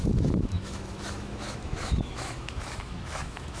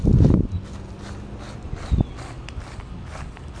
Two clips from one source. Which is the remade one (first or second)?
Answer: first